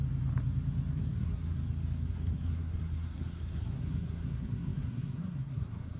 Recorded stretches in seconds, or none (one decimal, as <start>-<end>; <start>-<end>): 0.0-0.9; 1.6-2.1